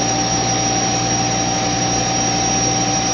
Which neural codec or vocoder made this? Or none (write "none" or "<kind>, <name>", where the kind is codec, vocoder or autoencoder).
none